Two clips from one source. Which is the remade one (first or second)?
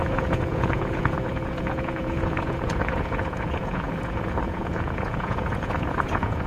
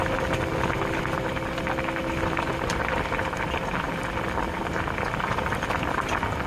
first